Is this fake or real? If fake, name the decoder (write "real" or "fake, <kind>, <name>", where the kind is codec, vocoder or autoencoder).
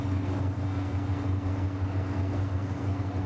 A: fake, codec, SNAC